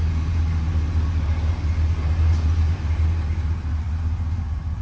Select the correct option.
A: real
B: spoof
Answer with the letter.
A